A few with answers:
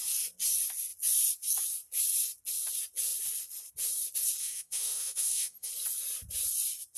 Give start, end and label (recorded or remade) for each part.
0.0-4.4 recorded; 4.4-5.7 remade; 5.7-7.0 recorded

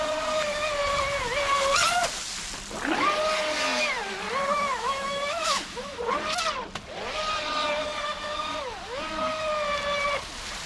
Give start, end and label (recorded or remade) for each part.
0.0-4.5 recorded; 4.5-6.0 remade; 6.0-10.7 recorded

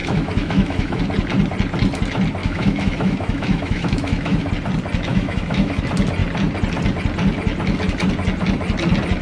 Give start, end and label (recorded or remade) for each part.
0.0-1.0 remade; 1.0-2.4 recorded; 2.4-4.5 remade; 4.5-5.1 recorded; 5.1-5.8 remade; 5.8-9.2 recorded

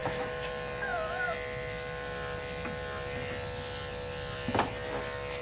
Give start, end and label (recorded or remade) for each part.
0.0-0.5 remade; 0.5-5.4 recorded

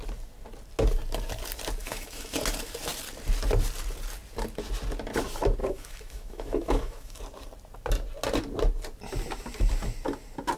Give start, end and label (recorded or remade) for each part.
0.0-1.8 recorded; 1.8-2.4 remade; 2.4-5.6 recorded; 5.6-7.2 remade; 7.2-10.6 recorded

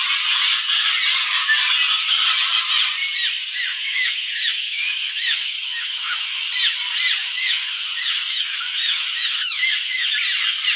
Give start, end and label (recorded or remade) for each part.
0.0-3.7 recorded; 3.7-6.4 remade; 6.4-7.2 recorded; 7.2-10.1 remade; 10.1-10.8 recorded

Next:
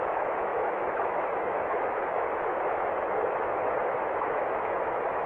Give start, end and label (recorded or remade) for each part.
0.0-5.3 remade